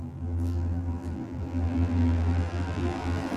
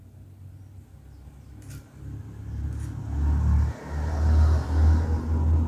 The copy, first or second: first